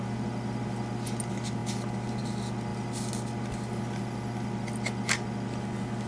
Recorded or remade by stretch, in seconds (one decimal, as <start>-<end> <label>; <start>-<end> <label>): 0.0-6.1 recorded